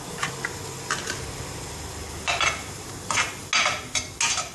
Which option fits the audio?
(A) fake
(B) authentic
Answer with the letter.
B